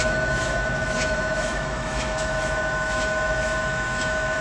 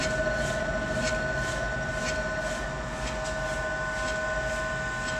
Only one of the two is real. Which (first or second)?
second